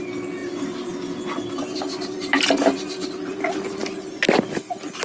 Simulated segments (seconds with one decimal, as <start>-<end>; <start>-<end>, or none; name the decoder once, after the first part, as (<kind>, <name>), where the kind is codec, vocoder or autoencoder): none